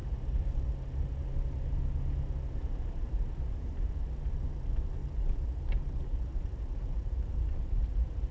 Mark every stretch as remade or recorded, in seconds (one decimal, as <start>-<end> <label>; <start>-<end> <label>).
0.0-5.0 recorded; 5.0-7.9 remade; 7.9-8.3 recorded